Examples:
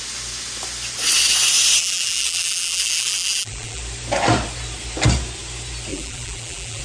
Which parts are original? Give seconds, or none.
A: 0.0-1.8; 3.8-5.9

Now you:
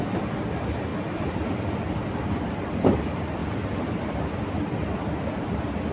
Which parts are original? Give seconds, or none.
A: 3.4-5.3